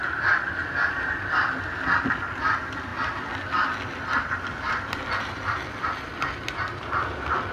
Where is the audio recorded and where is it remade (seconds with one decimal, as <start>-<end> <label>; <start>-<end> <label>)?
0.0-0.6 remade; 0.6-2.2 recorded; 2.2-2.9 remade; 2.9-4.9 recorded; 4.9-7.5 remade